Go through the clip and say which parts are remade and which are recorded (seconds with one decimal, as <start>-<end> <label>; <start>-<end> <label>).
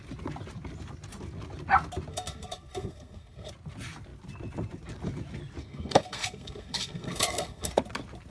0.0-2.1 recorded; 2.1-3.5 remade; 3.5-5.6 recorded; 5.6-7.7 remade; 7.7-8.3 recorded